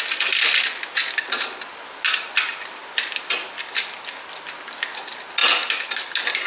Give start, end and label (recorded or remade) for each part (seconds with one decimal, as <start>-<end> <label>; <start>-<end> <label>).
0.0-6.5 recorded